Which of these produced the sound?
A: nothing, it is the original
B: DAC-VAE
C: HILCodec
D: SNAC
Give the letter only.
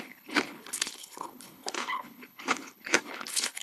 C